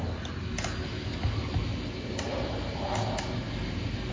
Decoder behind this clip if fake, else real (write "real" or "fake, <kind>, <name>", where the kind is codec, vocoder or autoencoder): real